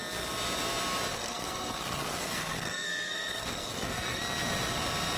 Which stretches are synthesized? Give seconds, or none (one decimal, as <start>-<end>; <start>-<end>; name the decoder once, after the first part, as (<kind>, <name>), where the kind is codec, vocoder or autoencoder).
1.1-4.2 (codec, SNAC)